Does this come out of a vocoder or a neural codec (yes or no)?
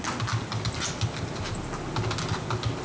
no